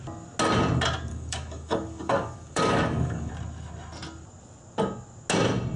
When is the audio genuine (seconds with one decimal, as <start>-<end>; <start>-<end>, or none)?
0.0-1.1; 3.3-5.8